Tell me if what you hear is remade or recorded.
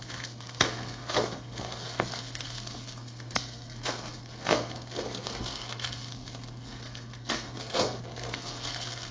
remade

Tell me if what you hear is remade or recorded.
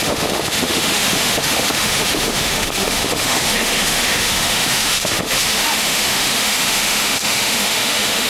remade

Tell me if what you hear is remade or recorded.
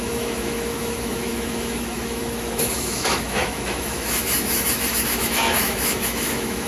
remade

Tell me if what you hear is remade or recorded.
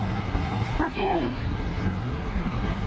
remade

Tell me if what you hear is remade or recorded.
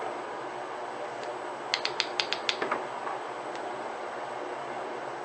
recorded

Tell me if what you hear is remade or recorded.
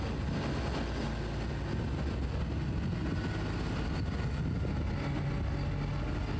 recorded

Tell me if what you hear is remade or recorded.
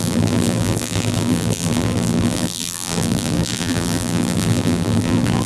remade